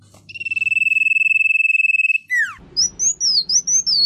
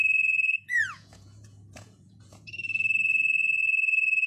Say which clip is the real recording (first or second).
first